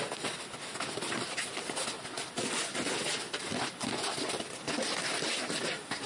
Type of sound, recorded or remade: recorded